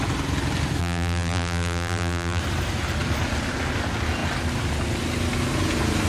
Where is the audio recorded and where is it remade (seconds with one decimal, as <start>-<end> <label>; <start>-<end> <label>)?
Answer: 0.0-0.8 recorded; 0.8-2.4 remade; 2.4-6.1 recorded